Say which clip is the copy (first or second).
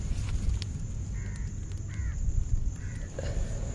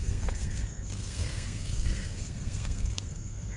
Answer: second